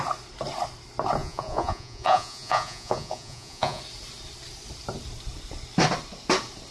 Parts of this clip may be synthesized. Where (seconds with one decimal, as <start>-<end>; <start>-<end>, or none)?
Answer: 1.2-3.8